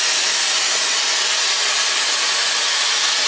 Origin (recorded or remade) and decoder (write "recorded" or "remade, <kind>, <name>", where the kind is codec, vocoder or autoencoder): recorded